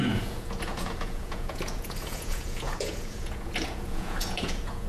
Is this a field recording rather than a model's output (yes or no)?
no